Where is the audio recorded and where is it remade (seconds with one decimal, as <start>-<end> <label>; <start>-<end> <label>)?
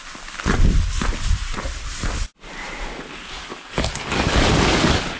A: 0.0-3.4 recorded; 3.4-5.2 remade